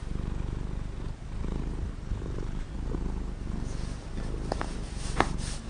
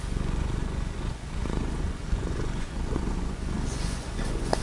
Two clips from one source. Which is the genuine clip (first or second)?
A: first